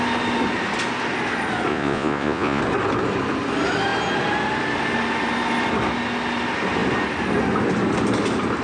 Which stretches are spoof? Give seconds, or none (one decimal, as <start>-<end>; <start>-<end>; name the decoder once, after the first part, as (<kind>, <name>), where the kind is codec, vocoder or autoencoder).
1.7-2.6 (vocoder, Vocos)